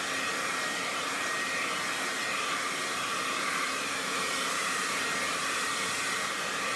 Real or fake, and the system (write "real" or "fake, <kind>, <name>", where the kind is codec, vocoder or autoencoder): fake, vocoder, BigVGAN v2